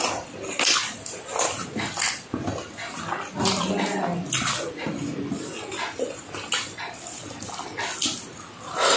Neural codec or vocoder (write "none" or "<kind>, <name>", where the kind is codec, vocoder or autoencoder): none